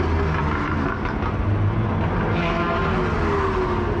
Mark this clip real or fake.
real